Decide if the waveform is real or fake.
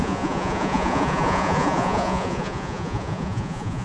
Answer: fake